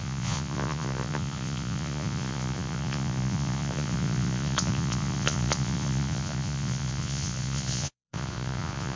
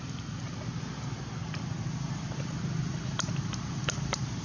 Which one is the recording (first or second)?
second